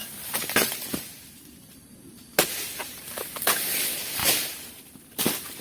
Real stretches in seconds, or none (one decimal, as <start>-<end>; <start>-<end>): 0.7-1.1; 3.6-4.2; 4.8-5.6